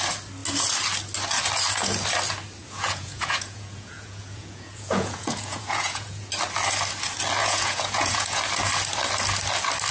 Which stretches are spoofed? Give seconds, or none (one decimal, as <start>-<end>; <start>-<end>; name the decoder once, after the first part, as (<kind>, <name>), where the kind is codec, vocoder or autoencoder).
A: 2.6-6.3 (vocoder, Vocos); 7.4-8.4